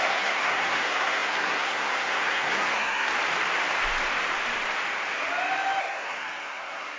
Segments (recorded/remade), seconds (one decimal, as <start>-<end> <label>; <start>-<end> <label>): 0.0-3.1 remade; 3.1-5.8 recorded; 5.8-7.0 remade